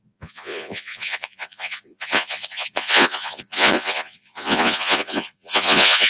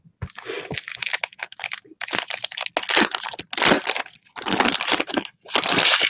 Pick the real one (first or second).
second